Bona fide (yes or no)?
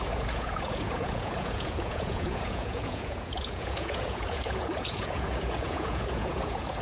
no